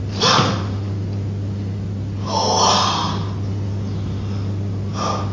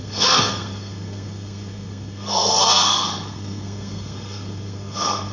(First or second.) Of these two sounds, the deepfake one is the second